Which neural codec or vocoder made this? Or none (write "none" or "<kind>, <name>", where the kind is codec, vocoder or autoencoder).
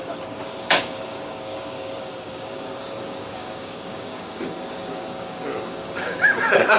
codec, DAC